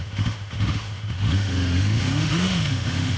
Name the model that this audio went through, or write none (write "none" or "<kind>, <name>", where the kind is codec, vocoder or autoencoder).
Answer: autoencoder, DAC-VAE